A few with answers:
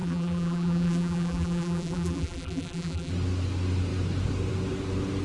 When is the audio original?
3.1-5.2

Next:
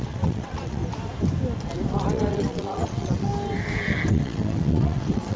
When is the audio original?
0.8-1.9; 3.3-4.1

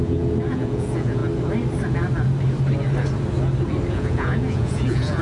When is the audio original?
1.2-3.9

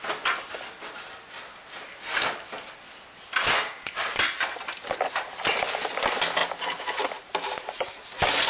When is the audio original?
0.0-8.5

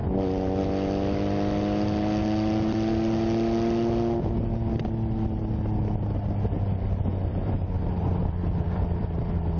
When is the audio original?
0.0-7.1